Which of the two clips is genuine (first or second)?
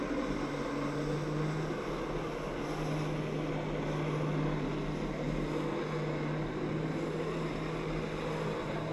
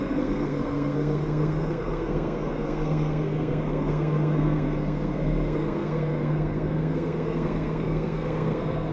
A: first